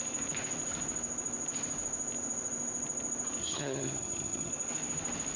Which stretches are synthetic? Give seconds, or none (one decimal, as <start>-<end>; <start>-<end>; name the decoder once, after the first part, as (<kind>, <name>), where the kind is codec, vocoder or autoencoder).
3.4-4.5 (vocoder, HiFi-GAN)